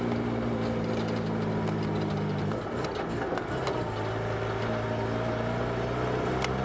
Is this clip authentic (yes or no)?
yes